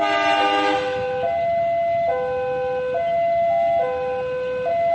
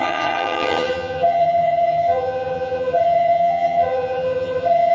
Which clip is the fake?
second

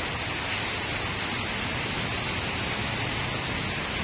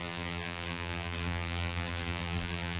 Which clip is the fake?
second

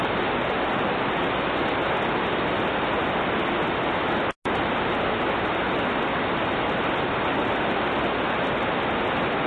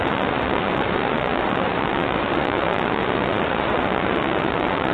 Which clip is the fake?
second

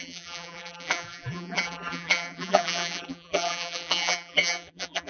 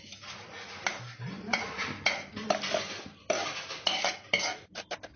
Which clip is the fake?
first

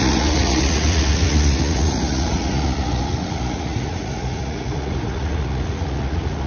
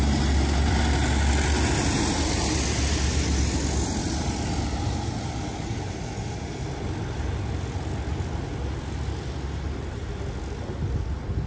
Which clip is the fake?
first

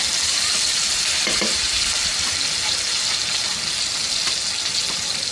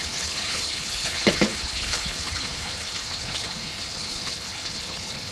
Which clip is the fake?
second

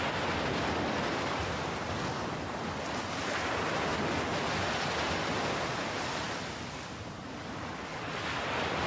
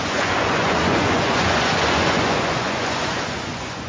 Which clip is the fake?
second